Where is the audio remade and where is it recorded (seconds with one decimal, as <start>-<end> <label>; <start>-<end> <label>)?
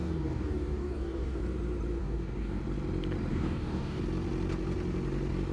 0.0-1.4 remade; 1.4-2.0 recorded; 2.0-2.6 remade; 2.6-3.3 recorded; 3.3-4.0 remade; 4.0-5.5 recorded